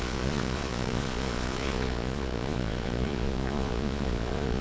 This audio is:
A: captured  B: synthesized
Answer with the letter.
B